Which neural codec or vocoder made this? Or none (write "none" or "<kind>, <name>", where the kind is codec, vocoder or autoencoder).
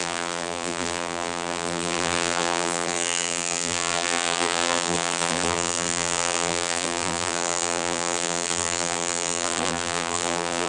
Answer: vocoder, BigVGAN v2